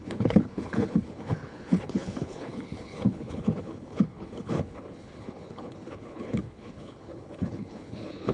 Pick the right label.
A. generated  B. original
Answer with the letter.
A